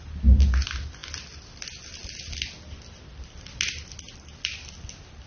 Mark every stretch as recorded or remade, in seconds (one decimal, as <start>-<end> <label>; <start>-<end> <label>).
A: 0.0-5.3 recorded